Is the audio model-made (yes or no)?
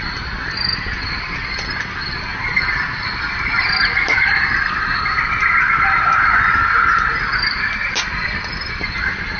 no